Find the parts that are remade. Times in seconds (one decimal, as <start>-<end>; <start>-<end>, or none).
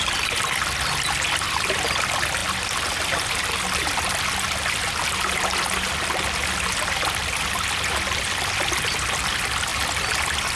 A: none